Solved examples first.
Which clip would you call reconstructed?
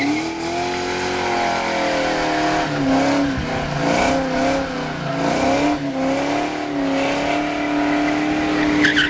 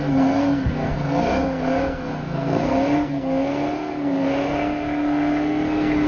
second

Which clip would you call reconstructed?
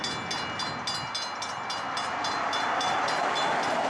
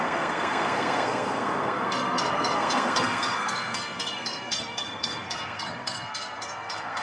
second